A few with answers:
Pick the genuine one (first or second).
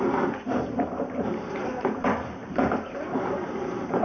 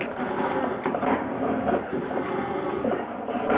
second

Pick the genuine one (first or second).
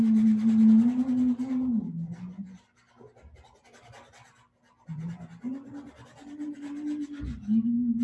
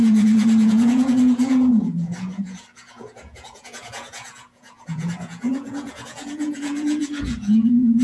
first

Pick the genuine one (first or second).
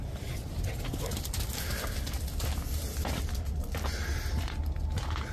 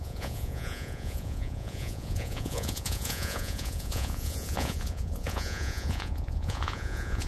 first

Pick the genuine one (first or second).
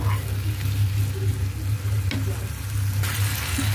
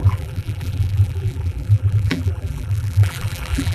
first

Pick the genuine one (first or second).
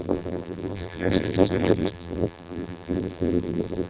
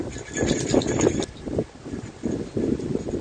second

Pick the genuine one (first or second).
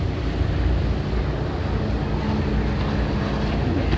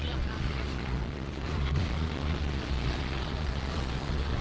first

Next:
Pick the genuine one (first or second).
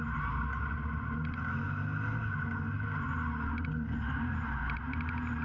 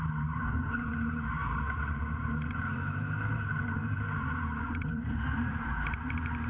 first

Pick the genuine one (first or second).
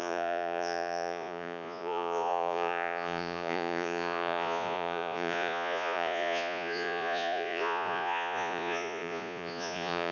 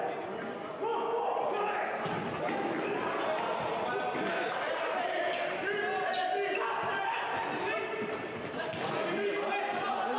second